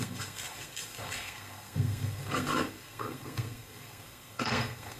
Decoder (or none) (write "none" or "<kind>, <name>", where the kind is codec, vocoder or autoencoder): codec, SNAC